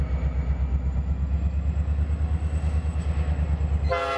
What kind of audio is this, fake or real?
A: real